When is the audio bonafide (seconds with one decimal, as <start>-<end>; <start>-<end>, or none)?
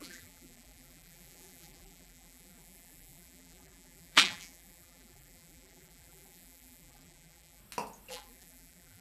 7.6-8.1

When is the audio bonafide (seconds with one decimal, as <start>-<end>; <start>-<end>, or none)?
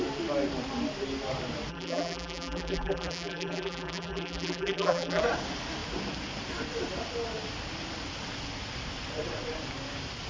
0.0-1.7; 5.2-10.3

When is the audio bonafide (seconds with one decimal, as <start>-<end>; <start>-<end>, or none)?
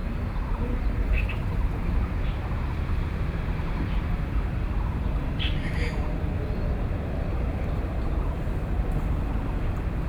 4.3-10.1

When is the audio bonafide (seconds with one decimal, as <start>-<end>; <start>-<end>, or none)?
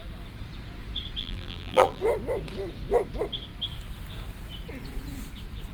0.0-1.2; 2.0-5.7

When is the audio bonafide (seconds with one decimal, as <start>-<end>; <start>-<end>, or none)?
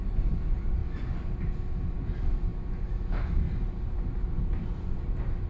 0.8-2.0; 2.5-4.4